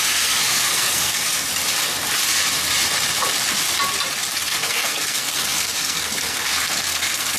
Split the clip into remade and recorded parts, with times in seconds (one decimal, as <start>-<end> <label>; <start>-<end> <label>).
0.0-1.5 remade; 1.5-4.3 recorded; 4.3-7.4 remade